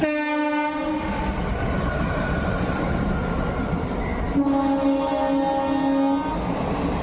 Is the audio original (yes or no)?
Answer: yes